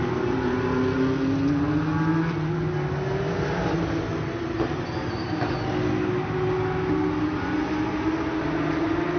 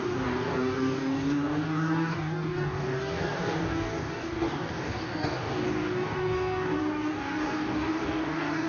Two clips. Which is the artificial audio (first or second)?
second